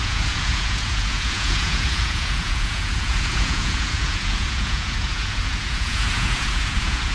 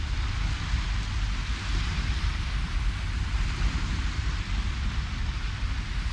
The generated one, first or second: first